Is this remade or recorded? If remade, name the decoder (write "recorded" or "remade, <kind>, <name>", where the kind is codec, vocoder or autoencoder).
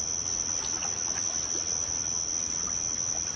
recorded